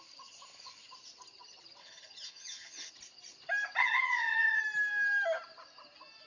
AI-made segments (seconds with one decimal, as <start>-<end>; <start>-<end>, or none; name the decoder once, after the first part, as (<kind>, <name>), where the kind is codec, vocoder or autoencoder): 1.8-2.9 (vocoder, HiFi-GAN); 3.8-4.6

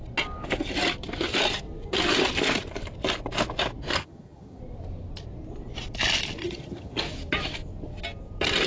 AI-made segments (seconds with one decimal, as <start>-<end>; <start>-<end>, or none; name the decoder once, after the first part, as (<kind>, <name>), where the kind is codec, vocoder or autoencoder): 3.9-4.6 (vocoder, HiFi-GAN); 6.4-7.0

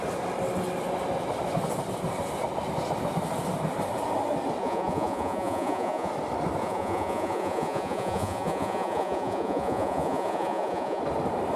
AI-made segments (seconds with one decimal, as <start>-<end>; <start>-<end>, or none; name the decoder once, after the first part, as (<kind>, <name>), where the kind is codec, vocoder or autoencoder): 4.6-6.1 (vocoder, Vocos); 6.6-11.0

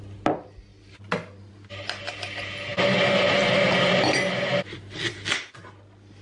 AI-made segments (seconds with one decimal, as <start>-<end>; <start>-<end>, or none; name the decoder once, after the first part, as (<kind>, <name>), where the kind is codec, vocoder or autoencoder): 0.7-1.5 (vocoder, BigVGAN v2)

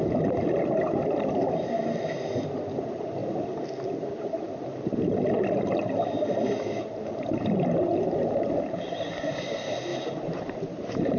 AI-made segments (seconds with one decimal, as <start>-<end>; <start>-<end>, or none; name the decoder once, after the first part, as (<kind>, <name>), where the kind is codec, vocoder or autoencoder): 9.9-11.2 (vocoder, BigVGAN v2)

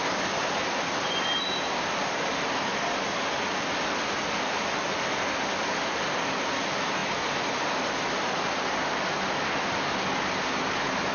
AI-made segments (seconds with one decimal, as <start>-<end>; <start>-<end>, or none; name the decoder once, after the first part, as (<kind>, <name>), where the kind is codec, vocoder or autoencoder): none

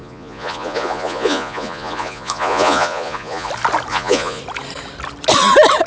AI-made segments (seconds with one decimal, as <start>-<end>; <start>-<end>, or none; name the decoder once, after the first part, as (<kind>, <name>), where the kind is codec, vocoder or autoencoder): 0.0-3.5 (vocoder, Vocos); 3.9-4.4